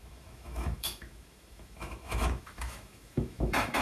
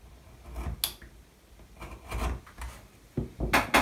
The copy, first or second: first